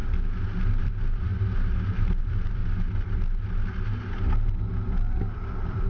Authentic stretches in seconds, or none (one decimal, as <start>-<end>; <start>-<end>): 0.0-0.8; 1.3-2.2; 2.6-5.2